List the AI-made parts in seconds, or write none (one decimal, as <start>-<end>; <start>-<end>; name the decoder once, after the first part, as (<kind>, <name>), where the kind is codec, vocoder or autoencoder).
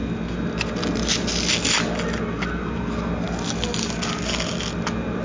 none